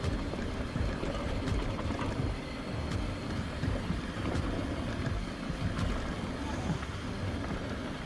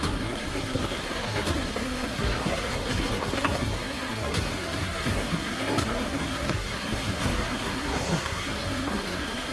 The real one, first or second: first